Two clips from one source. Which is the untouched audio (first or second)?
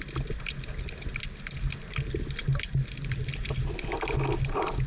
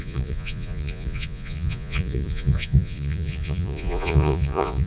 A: first